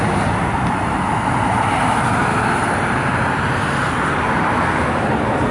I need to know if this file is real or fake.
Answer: real